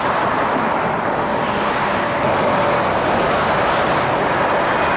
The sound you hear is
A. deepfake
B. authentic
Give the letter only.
B